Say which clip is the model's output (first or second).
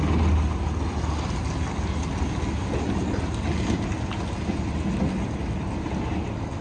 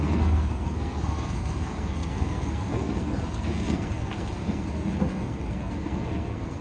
second